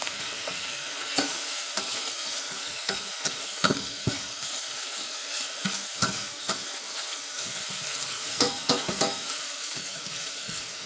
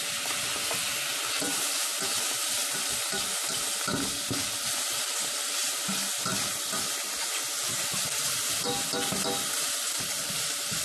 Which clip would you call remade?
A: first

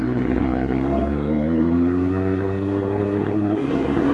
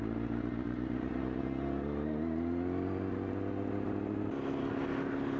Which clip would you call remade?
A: first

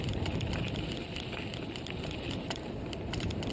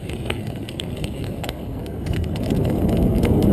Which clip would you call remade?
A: second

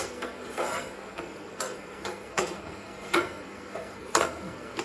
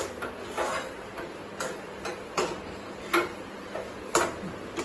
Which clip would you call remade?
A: first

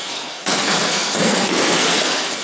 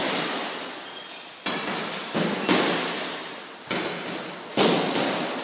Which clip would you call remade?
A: first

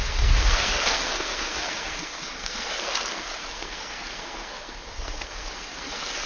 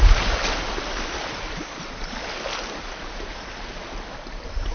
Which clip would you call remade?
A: first